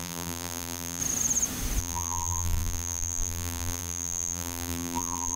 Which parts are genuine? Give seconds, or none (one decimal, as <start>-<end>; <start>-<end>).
1.0-1.8